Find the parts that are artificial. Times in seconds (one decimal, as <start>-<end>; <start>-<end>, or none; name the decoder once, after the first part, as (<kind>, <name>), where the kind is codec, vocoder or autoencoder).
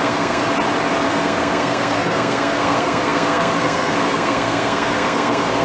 0.0-0.4 (codec, SNAC); 1.1-5.6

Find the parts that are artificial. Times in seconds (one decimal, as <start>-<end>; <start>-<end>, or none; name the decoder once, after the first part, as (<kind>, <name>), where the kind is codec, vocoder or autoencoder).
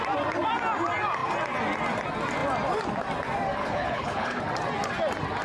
3.6-4.4 (codec, HILCodec)